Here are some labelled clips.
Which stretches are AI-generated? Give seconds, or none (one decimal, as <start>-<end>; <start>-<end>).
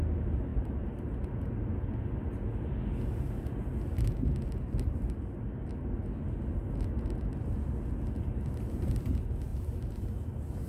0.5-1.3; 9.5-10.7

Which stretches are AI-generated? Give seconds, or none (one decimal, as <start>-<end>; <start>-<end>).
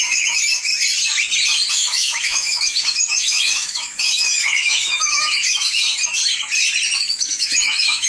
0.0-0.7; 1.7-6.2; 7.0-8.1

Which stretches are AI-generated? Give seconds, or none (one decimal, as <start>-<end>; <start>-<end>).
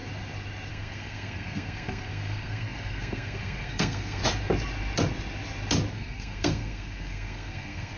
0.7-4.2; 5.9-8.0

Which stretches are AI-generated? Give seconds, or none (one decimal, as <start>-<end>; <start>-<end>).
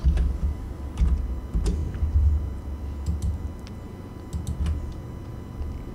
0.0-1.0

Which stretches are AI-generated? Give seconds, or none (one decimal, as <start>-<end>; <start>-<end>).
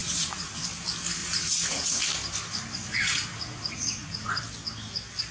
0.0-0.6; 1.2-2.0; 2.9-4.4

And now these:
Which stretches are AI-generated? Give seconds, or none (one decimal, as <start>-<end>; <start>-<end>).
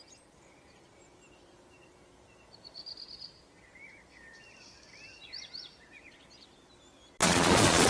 7.2-7.9